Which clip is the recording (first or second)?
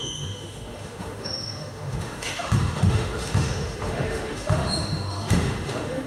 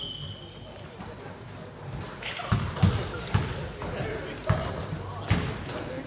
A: second